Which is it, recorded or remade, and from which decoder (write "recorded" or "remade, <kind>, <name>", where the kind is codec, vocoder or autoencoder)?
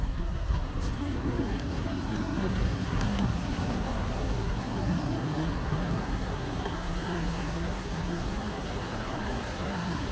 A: remade, codec, SNAC